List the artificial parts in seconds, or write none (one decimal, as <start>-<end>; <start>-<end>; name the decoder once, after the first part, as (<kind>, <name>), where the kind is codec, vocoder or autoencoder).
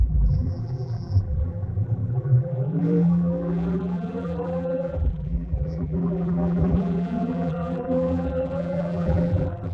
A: 0.0-9.7 (vocoder, BigVGAN v2)